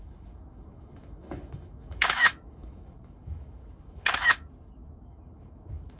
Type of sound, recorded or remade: remade